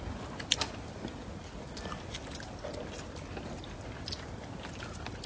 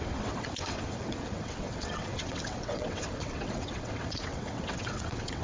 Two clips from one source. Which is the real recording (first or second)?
first